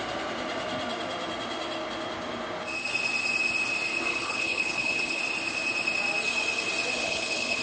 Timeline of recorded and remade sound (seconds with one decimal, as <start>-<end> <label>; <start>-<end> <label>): 0.0-4.1 recorded; 4.1-5.2 remade; 5.2-7.0 recorded; 7.0-7.6 remade